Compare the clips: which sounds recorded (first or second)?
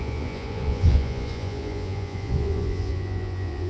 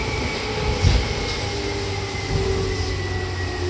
second